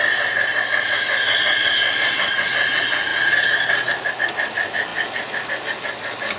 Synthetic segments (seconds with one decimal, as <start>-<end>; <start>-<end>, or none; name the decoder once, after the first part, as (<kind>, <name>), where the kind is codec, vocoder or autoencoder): none